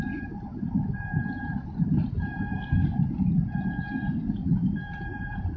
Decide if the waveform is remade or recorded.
recorded